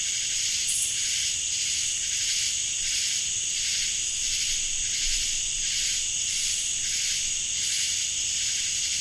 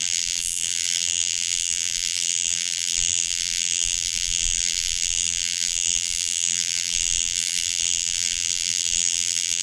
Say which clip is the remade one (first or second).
second